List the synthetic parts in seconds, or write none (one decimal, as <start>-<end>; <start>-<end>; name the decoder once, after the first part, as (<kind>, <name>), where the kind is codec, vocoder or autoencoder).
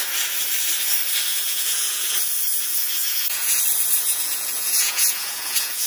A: 1.3-2.1 (vocoder, Vocos); 2.5-3.6; 4.1-5.9